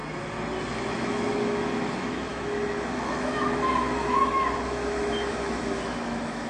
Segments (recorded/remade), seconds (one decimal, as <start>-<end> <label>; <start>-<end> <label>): 0.0-0.6 recorded; 0.6-6.5 remade

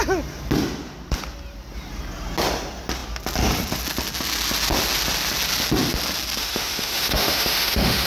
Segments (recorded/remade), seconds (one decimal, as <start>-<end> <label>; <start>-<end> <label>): 0.0-6.4 recorded; 6.4-8.1 remade

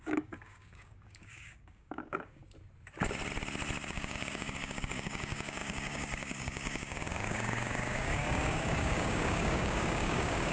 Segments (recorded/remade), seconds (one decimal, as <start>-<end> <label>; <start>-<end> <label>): 0.0-2.4 remade; 2.4-3.9 recorded; 3.9-10.5 remade

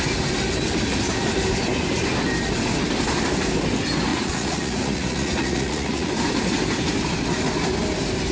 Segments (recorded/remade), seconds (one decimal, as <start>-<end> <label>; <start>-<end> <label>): 0.0-4.1 recorded; 4.1-6.1 remade; 6.1-8.3 recorded

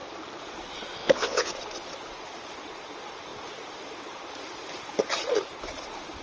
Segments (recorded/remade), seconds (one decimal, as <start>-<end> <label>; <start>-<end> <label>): 0.0-1.0 recorded; 1.0-1.5 remade; 1.5-6.2 recorded

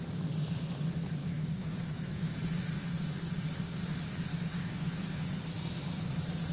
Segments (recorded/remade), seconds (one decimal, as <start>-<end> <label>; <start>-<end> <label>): 0.0-1.2 recorded; 1.2-2.4 remade; 2.4-4.3 recorded; 4.3-5.4 remade; 5.4-6.5 recorded